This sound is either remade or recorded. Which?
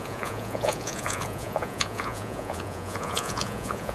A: remade